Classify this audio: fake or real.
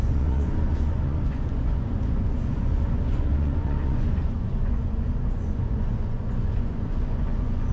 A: fake